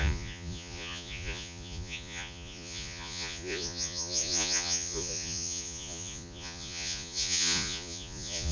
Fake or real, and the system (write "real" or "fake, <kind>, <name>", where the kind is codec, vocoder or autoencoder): fake, vocoder, Vocos